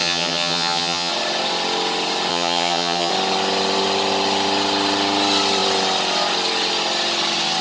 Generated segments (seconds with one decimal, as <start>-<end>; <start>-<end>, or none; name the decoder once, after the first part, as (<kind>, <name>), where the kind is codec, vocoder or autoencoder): 0.0-1.1 (vocoder, HiFi-GAN); 2.3-3.1

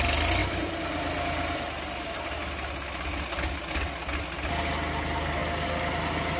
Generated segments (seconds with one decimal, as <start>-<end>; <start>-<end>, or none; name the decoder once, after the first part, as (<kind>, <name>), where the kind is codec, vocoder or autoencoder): none

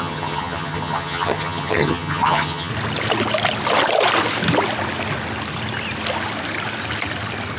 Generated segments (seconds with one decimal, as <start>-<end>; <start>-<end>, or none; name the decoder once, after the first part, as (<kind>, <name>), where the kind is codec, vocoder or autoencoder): 0.0-2.7 (vocoder, HiFi-GAN)

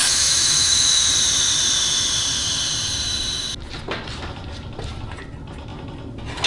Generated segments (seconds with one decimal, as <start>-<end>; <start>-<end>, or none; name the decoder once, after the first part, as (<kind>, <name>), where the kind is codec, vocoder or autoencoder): 0.0-1.1 (autoencoder, DAC-VAE)

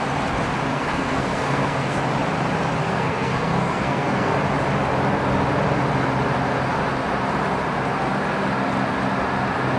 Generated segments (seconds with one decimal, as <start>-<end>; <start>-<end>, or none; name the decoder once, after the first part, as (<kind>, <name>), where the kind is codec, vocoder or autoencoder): 0.7-2.0 (codec, SNAC); 2.8-4.3

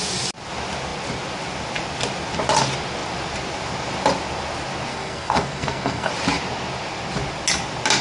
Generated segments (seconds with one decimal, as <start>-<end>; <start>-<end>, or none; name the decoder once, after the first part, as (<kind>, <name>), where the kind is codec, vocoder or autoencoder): 4.9-6.1 (codec, SNAC)

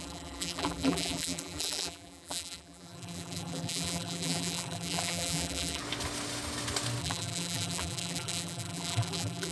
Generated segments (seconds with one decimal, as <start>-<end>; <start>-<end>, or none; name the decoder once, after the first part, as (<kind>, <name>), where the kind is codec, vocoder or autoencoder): 0.0-5.8 (vocoder, BigVGAN v2); 7.0-9.5